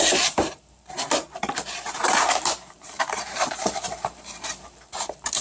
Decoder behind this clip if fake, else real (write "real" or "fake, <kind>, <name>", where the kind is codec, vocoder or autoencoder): fake, vocoder, BigVGAN v2